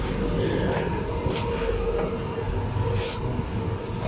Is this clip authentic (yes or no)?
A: yes